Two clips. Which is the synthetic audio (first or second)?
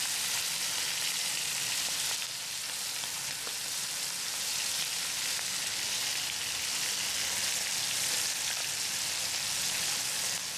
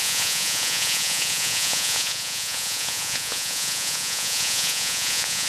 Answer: second